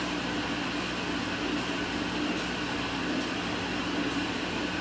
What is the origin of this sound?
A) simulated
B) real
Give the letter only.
B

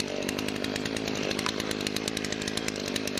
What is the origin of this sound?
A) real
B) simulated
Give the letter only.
A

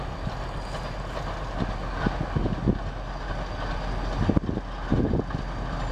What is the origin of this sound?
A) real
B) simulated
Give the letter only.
A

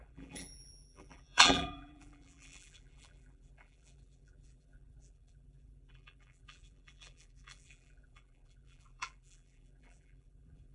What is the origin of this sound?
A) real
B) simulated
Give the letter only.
B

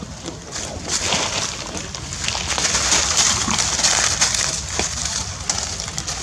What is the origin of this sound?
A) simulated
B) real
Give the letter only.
B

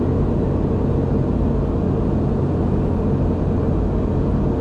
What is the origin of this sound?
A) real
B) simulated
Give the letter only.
A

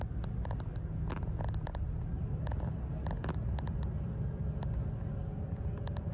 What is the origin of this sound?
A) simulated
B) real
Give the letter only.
B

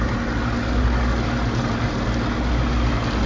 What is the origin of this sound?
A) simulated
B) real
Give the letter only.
B